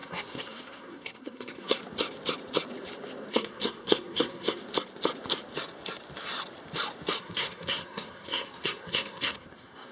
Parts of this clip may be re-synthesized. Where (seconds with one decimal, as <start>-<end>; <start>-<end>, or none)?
0.0-1.8; 3.3-4.6; 7.2-9.9

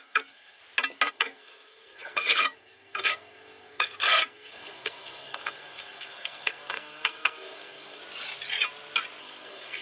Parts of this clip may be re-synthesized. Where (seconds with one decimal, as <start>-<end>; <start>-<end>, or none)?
0.0-0.6; 1.1-8.0; 9.2-9.8

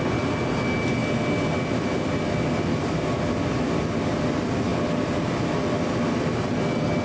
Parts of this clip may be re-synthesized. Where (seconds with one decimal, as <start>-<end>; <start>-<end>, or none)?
none

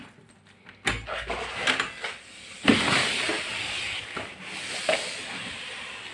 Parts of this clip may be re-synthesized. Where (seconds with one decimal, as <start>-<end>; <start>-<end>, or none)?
none

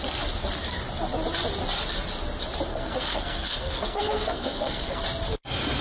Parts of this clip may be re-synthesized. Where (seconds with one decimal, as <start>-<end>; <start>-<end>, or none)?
2.7-5.0

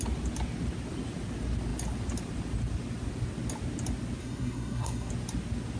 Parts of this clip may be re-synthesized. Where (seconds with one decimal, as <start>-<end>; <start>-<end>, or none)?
4.2-5.1

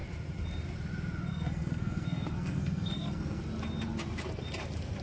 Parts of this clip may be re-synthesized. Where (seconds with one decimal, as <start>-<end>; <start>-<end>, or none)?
1.3-3.4